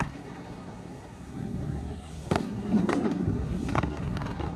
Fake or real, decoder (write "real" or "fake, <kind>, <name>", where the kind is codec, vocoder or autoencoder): fake, codec, SNAC